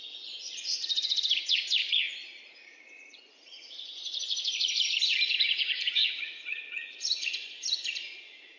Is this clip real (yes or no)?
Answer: no